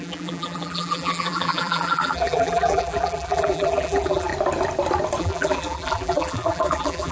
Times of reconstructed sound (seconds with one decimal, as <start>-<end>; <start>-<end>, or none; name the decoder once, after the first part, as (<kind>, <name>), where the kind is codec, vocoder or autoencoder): 0.0-4.3 (vocoder, BigVGAN v2); 5.2-7.1